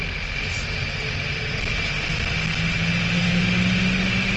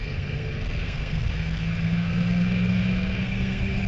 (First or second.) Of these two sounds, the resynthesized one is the second